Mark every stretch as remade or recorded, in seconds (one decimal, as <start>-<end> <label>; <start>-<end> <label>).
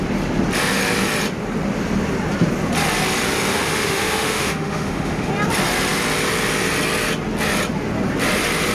0.0-3.5 recorded; 3.5-5.3 remade; 5.3-8.7 recorded